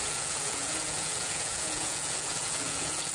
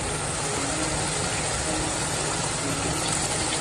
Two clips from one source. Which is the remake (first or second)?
first